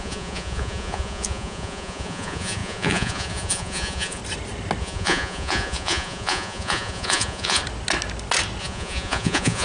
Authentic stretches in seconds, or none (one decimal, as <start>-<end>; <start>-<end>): 4.2-4.8; 7.6-8.6